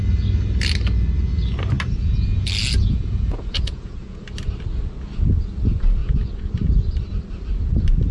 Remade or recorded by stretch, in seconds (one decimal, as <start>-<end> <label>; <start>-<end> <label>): 0.0-2.8 recorded; 2.8-4.2 remade; 4.2-6.0 recorded; 6.0-6.5 remade; 6.5-8.1 recorded